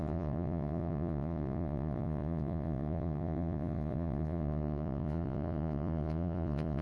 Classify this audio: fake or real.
fake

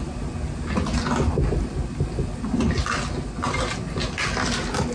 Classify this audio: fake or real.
real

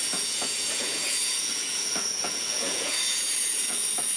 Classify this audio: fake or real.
fake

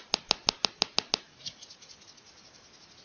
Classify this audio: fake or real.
real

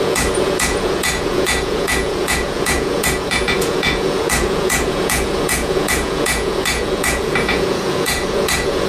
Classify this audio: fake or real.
fake